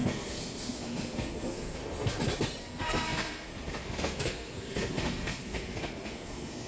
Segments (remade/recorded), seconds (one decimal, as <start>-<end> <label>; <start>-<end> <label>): 0.0-1.8 remade; 1.8-2.6 recorded; 2.6-6.7 remade